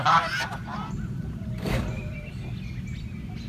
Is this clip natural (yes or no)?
yes